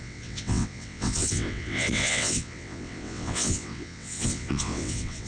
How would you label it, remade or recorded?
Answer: remade